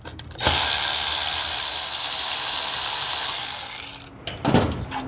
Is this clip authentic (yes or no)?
yes